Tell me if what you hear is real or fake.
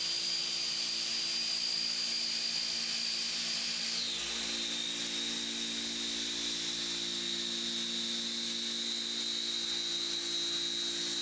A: real